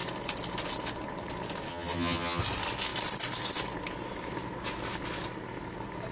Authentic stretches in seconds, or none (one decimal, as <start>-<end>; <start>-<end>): 0.0-1.7; 2.4-6.1

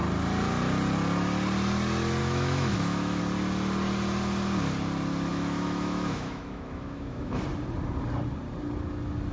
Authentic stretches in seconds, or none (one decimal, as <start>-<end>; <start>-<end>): 0.0-2.2; 3.2-5.3; 7.4-9.3

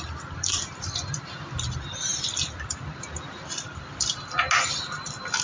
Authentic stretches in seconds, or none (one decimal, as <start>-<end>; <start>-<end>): 0.0-5.4

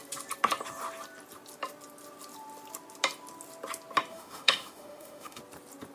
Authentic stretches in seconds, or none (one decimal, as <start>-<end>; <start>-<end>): 0.0-4.1; 5.4-5.9

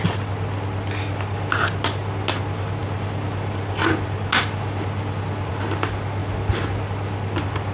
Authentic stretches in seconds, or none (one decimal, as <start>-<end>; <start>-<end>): 0.0-7.7

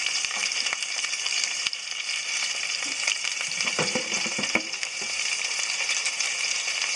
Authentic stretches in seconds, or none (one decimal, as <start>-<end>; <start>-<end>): none

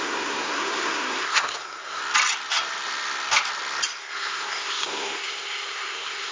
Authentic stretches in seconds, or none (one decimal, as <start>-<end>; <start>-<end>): 2.0-4.0